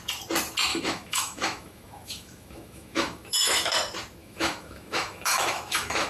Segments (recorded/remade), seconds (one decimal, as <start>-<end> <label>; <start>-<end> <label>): 0.0-0.7 recorded; 0.7-3.7 remade; 3.7-4.2 recorded; 4.2-6.1 remade